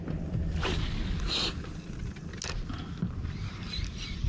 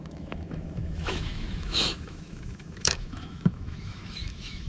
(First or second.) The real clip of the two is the first